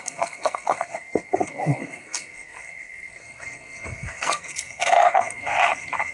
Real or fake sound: fake